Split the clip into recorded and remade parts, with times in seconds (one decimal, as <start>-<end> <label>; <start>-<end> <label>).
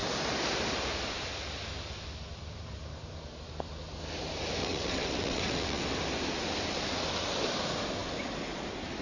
0.0-4.6 recorded; 4.6-5.8 remade; 5.8-9.0 recorded